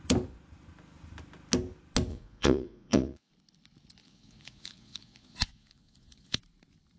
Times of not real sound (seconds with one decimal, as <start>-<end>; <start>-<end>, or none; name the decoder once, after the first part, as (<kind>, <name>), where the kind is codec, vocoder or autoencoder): 2.1-3.3 (vocoder, Vocos); 4.0-6.4